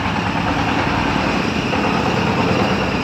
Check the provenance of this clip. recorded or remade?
recorded